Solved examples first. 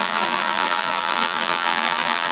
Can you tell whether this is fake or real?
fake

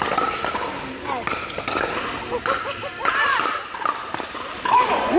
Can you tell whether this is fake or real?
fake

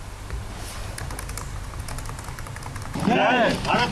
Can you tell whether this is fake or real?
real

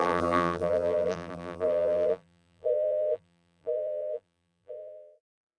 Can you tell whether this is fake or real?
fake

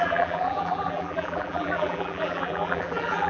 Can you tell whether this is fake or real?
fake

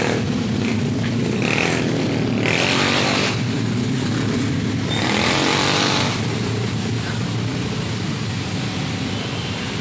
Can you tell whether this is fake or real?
fake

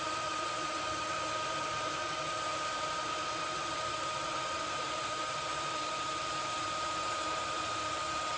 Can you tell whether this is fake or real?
fake